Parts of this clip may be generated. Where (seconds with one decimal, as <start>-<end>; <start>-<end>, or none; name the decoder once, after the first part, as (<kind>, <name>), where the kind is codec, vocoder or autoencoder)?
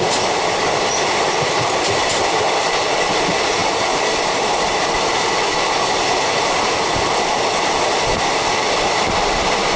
none